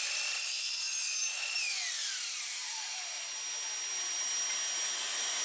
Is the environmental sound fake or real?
real